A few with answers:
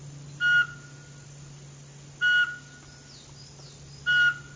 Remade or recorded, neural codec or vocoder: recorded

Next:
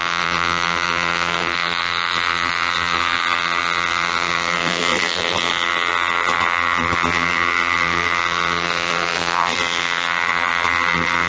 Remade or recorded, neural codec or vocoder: remade, vocoder, BigVGAN v2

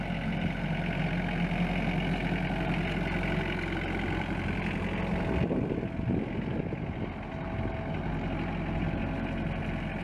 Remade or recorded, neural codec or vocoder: recorded